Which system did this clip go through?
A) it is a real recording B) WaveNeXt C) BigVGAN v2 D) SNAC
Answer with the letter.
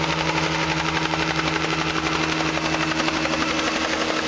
A